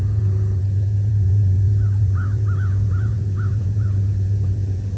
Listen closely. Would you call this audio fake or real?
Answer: fake